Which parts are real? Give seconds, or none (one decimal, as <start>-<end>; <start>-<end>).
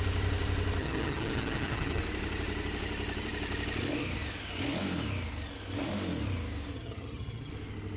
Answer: 0.0-0.8; 2.0-6.7; 7.5-8.0